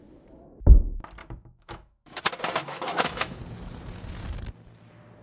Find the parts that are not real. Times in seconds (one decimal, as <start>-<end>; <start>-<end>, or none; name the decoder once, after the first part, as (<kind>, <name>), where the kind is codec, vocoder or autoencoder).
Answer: 1.2-2.2 (autoencoder, DAC-VAE); 2.6-3.4